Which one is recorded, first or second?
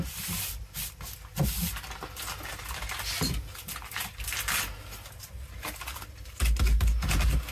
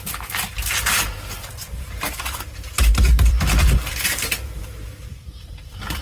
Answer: first